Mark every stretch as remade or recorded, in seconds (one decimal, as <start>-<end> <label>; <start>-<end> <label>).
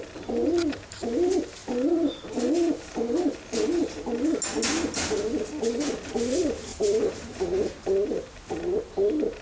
0.0-6.7 recorded; 6.7-7.4 remade; 7.4-9.4 recorded